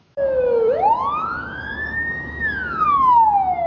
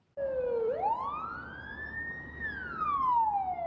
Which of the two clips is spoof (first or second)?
first